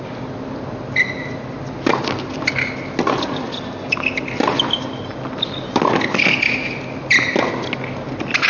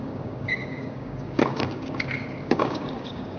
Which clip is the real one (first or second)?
first